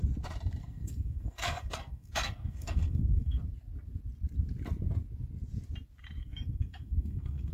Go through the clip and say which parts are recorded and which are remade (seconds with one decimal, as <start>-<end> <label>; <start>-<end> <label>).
0.0-0.6 recorded; 0.6-3.4 remade; 3.4-6.2 recorded; 6.2-7.5 remade